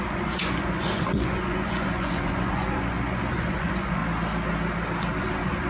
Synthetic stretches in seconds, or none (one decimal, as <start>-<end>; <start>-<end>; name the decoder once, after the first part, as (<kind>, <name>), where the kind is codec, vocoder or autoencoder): 0.0-4.0 (vocoder, Vocos); 5.2-5.7